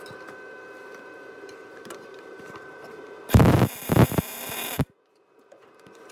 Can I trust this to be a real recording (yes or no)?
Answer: no